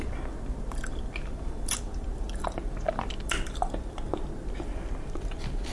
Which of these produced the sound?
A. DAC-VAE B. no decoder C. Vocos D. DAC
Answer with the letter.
B